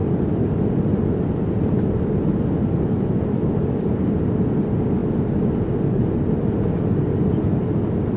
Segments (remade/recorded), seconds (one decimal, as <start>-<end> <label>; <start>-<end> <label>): 0.0-8.2 recorded